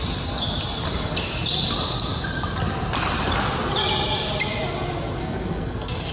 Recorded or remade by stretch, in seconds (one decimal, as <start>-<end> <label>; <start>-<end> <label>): 0.0-5.2 recorded; 5.2-6.1 remade